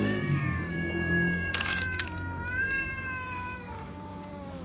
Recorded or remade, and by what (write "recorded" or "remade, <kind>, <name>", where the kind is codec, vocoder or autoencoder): remade, codec, DAC